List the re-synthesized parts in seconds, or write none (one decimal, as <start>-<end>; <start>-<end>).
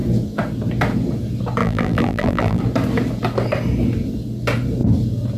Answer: 1.6-2.6